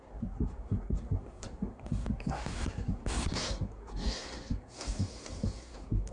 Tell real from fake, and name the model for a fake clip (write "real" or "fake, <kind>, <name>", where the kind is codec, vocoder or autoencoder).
fake, codec, SNAC